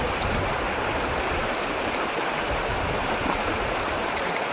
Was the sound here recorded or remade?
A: remade